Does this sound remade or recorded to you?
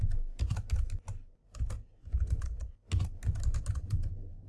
recorded